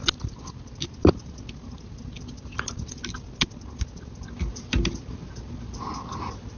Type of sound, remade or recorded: recorded